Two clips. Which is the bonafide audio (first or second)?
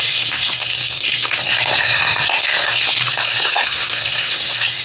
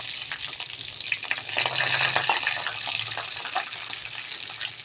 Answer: second